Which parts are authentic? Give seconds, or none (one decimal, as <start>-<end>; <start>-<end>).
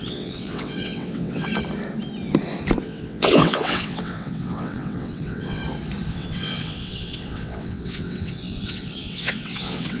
1.5-2.8; 5.6-6.1